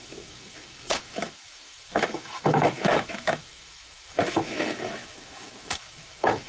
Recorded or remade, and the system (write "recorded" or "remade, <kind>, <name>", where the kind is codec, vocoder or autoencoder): remade, autoencoder, DAC-VAE